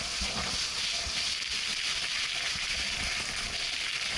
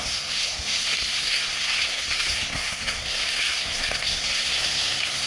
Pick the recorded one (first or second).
first